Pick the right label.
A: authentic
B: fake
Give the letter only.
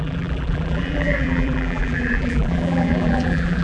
B